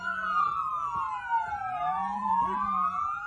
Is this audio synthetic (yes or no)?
yes